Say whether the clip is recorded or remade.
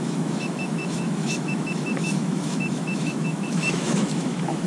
remade